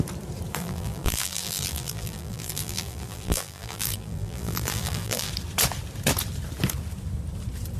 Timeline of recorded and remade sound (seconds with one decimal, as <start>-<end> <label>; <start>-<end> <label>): 0.0-0.6 recorded; 0.6-5.3 remade; 5.3-7.8 recorded